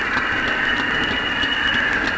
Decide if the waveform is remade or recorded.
recorded